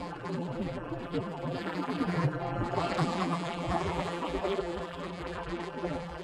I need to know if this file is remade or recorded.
remade